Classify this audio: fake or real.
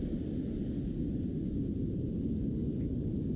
real